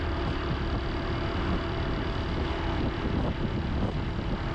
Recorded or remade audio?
recorded